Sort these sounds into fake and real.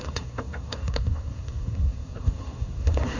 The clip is fake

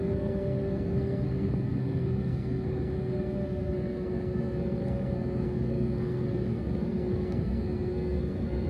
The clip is fake